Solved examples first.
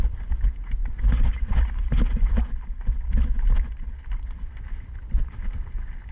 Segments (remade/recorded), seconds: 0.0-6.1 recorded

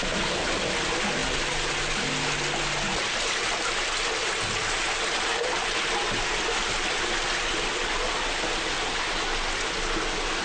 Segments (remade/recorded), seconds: 0.0-10.4 recorded